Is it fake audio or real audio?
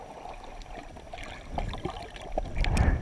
real